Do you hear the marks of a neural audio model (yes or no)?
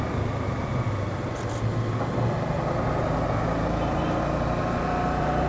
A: no